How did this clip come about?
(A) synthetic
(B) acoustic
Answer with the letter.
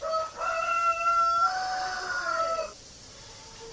B